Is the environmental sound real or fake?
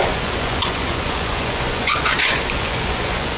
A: fake